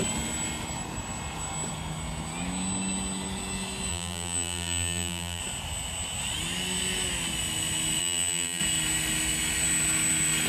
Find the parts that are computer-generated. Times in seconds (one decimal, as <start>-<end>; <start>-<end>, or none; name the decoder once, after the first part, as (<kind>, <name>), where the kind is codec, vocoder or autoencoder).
3.9-5.4 (vocoder, BigVGAN v2); 8.0-8.6